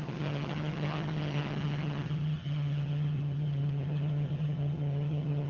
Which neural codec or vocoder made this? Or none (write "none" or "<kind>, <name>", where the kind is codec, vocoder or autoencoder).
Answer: vocoder, HiFi-GAN